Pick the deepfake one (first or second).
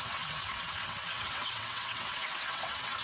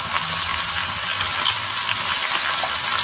first